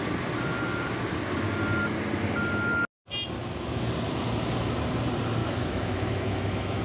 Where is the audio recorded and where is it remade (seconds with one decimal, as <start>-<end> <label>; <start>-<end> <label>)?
0.0-3.4 recorded; 3.4-3.9 remade; 3.9-5.4 recorded; 5.4-6.8 remade